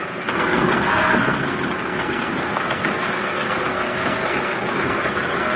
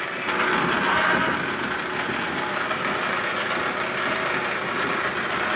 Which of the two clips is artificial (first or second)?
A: first